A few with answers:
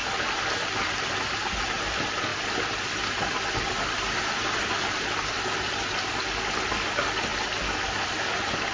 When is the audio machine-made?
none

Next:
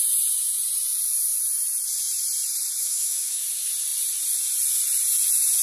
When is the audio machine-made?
2.8-3.4 (autoencoder, DAC-VAE)

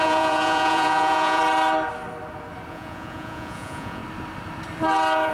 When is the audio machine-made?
0.0-1.4 (vocoder, Vocos); 2.7-4.0

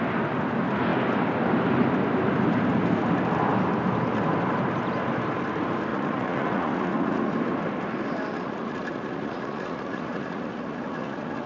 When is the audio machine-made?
5.9-7.3 (vocoder, Vocos); 8.3-11.5

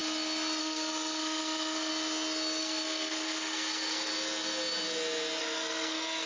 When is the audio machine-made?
0.6-1.9 (codec, SNAC); 2.6-4.1; 5.4-6.3

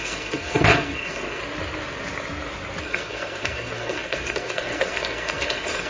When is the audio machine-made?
0.0-1.4 (codec, SNAC); 2.8-5.9

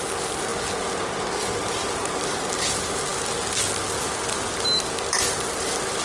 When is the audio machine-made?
none

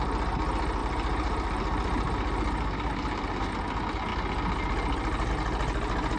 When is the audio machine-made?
0.8-3.6 (vocoder, BigVGAN v2)